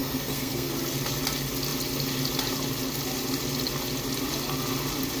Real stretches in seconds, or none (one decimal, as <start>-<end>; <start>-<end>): 0.7-5.2